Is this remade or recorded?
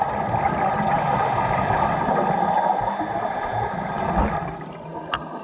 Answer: recorded